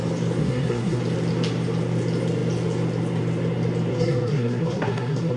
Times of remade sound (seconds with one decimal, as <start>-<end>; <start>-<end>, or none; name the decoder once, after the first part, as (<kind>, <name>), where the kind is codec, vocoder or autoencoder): 0.4-1.0 (codec, SNAC); 3.9-5.4